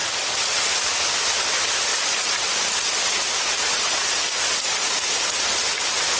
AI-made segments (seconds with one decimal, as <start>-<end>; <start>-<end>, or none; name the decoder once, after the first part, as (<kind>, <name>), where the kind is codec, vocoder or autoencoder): none